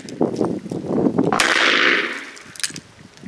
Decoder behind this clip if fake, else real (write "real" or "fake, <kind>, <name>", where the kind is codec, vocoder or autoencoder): real